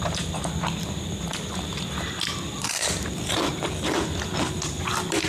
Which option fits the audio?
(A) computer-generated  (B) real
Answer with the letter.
A